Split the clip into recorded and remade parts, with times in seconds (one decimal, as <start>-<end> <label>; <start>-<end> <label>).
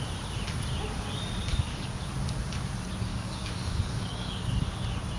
0.0-1.5 recorded; 1.5-2.1 remade; 2.1-3.1 recorded; 3.1-4.5 remade; 4.5-5.2 recorded